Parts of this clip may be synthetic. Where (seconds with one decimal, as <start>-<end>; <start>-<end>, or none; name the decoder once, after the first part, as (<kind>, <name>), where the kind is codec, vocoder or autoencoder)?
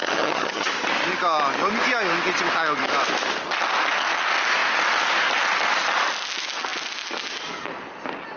0.0-0.7 (vocoder, HiFi-GAN)